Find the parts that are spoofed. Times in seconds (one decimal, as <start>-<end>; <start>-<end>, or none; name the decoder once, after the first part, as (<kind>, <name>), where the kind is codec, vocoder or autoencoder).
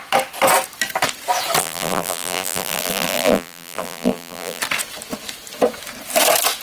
1.6-4.6 (vocoder, BigVGAN v2)